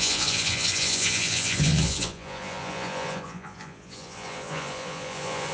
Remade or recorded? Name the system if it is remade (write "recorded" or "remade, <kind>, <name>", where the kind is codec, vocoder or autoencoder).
remade, vocoder, Vocos